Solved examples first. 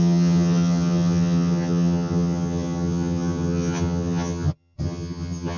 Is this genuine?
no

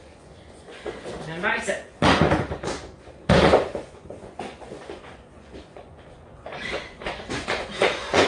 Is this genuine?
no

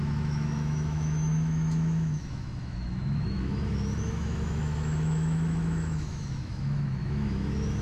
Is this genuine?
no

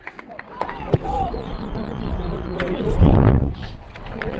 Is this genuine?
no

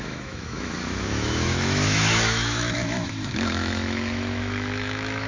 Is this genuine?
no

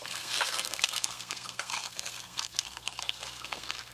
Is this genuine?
no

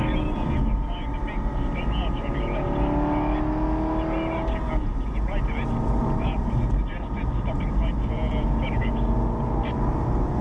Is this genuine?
yes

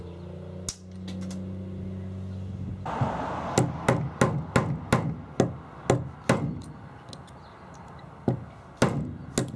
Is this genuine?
yes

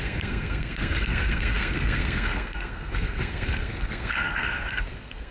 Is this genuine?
no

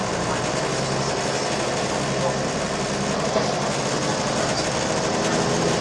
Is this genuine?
yes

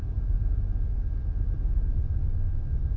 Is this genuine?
yes